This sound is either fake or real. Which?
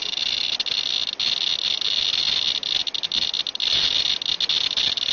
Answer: real